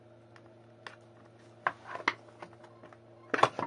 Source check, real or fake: real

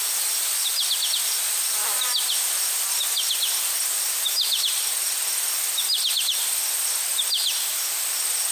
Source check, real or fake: real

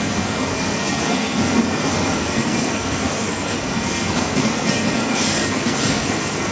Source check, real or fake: fake